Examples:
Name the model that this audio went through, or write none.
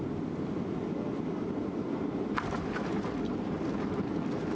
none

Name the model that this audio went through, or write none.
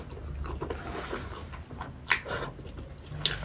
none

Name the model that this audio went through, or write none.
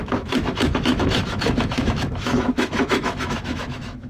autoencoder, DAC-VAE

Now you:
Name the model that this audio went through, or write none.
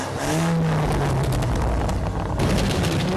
none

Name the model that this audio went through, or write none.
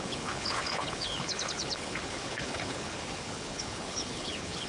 codec, HILCodec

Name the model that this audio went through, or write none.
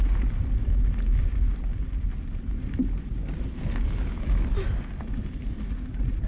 none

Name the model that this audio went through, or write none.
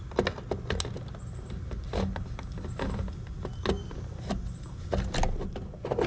none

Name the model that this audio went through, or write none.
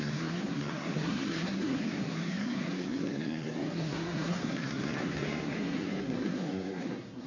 codec, SNAC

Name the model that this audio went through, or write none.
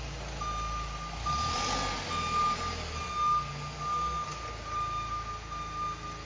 none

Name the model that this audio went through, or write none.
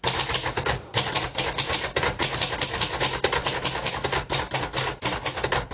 none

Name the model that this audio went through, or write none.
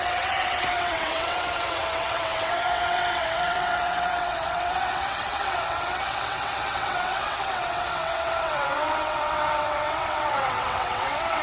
vocoder, WaveNeXt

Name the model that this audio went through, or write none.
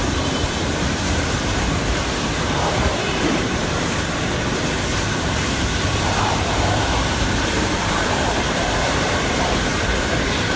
vocoder, BigVGAN v2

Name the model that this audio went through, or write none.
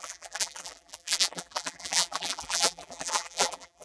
vocoder, BigVGAN v2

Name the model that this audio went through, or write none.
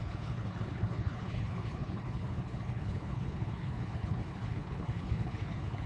codec, HILCodec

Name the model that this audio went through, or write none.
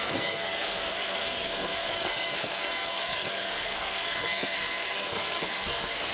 codec, SNAC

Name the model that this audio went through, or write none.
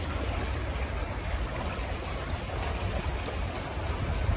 none